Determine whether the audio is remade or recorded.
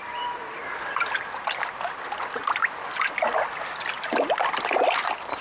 recorded